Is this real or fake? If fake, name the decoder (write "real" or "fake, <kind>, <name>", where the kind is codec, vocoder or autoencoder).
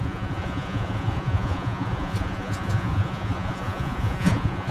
fake, vocoder, Vocos